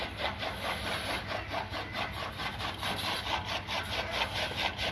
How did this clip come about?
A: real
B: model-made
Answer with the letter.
A